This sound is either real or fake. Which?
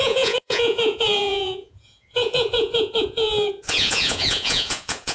fake